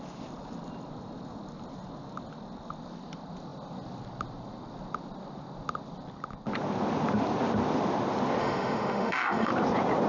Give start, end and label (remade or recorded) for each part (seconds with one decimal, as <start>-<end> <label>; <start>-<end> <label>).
0.0-8.4 recorded; 8.4-9.5 remade; 9.5-10.1 recorded